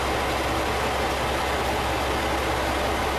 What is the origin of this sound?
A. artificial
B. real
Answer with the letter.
B